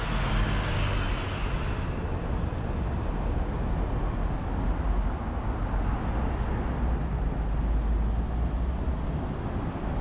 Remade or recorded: recorded